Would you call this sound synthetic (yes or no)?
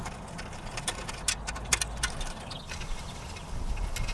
no